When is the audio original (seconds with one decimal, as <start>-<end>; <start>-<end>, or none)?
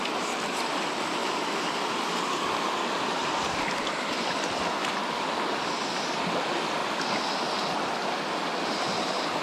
6.8-8.7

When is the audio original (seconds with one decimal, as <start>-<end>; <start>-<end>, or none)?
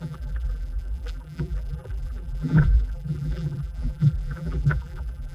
none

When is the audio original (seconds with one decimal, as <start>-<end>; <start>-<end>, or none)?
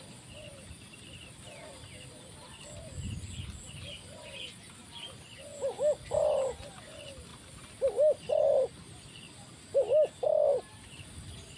0.0-10.5; 11.0-11.6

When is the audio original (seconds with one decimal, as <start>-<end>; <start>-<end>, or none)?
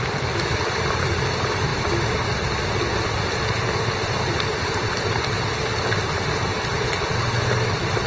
1.7-3.5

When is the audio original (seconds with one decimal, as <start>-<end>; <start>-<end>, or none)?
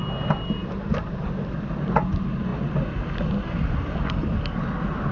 0.0-0.6; 1.5-5.1